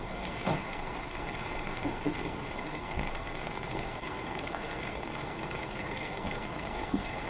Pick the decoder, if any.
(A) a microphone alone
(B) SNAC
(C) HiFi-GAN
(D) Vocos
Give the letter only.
B